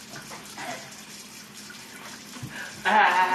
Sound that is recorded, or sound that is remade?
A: recorded